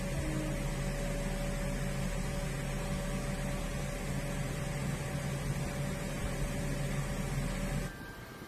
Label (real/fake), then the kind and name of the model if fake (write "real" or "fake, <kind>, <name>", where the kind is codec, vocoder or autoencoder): real